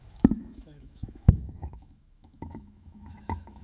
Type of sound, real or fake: fake